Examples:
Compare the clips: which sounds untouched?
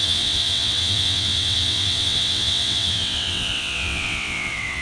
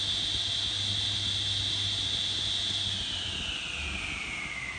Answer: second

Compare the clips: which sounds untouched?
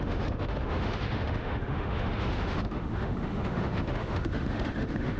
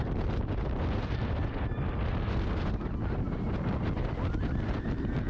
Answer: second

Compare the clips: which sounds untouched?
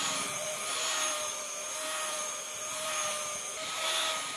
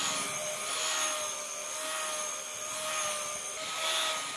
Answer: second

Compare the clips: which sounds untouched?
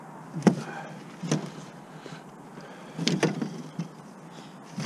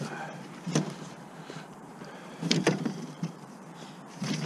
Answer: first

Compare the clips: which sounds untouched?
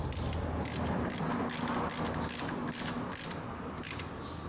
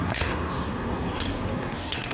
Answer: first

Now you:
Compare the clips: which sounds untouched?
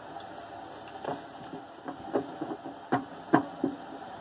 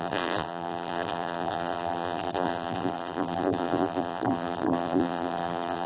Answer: first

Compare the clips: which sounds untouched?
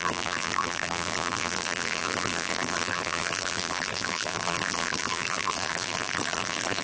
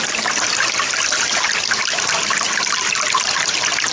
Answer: second